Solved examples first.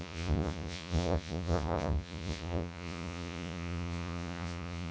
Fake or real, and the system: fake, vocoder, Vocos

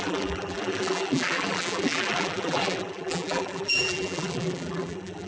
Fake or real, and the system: fake, vocoder, BigVGAN v2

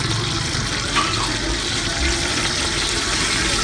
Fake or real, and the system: real